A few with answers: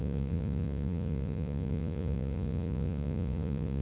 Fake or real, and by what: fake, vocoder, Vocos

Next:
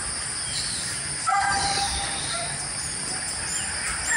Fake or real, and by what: real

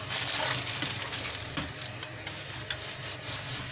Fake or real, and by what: real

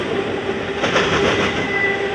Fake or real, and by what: real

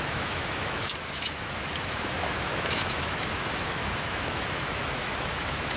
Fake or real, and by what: fake, autoencoder, DAC-VAE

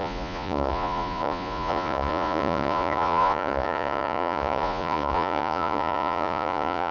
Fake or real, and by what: fake, vocoder, Vocos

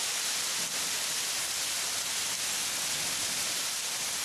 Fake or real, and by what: real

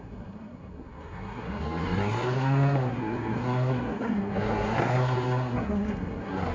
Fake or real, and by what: fake, codec, SNAC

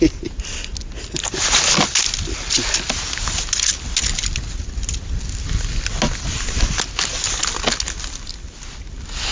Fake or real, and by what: real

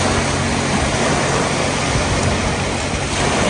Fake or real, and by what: real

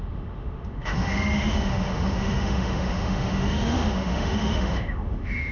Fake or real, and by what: fake, autoencoder, DAC-VAE